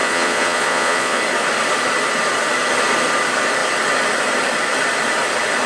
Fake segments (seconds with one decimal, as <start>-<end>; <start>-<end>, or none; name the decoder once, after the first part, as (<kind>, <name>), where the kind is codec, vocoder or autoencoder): 0.0-1.2 (vocoder, Vocos)